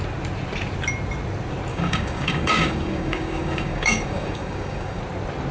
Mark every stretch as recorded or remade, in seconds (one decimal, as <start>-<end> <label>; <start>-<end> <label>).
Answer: 0.0-1.7 recorded; 1.7-5.0 remade; 5.0-5.5 recorded